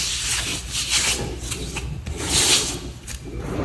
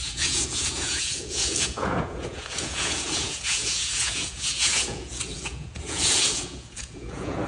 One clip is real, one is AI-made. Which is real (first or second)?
first